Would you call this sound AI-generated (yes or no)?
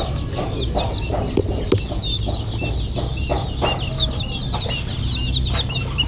no